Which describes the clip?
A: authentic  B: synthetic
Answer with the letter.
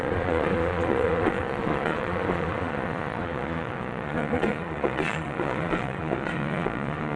B